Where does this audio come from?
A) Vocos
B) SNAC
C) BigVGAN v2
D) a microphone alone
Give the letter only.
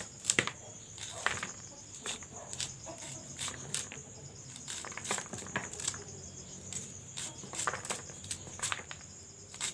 C